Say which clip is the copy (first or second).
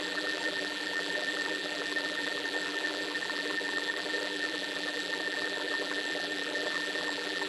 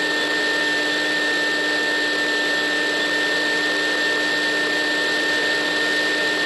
first